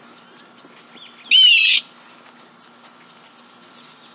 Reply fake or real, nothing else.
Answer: real